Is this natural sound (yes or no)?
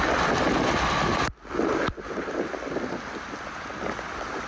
yes